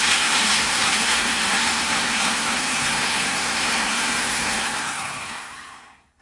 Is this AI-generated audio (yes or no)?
yes